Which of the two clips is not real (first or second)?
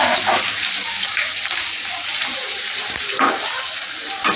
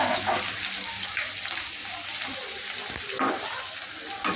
first